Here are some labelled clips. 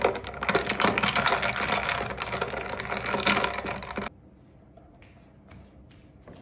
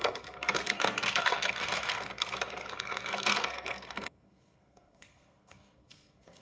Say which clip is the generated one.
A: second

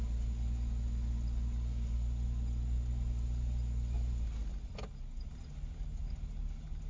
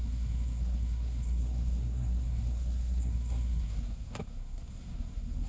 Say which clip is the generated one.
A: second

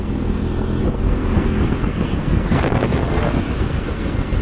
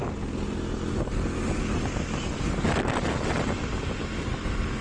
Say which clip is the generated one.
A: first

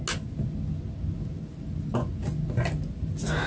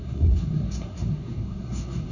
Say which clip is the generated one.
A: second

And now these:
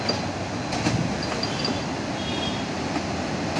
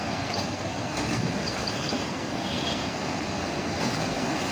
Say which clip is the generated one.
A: second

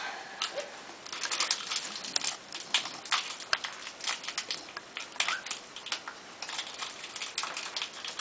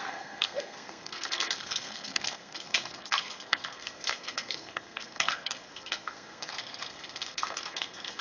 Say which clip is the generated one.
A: second